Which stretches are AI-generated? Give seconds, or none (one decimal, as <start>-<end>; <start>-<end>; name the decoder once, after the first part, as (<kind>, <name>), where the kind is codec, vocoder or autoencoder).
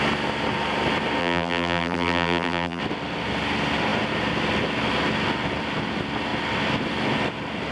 1.2-2.8 (vocoder, BigVGAN v2)